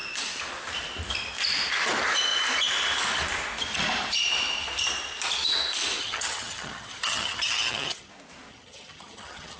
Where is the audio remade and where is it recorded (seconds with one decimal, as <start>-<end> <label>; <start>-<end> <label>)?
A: 0.0-6.0 recorded; 6.0-8.1 remade; 8.1-8.5 recorded; 8.5-9.6 remade